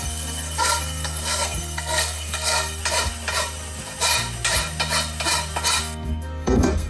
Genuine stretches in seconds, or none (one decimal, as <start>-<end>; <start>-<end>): 2.8-5.8